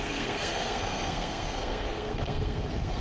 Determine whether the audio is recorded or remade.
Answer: remade